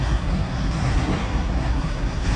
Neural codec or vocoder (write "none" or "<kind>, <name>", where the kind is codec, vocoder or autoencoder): codec, SNAC